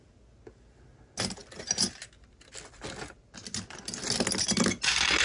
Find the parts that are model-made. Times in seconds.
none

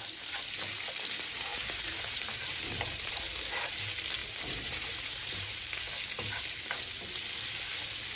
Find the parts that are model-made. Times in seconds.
1.5-3.4 (vocoder, BigVGAN v2); 4.2-5.7

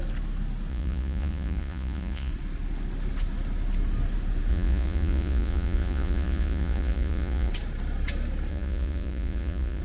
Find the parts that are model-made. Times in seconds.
0.7-2.3 (vocoder, Vocos); 4.5-7.5; 8.5-9.8

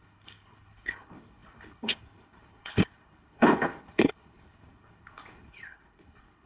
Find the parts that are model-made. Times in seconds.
0.0-6.5 (codec, HILCodec)

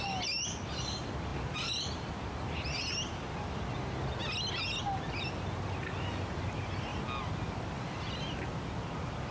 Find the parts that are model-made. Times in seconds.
1.3-2.1 (vocoder, BigVGAN v2)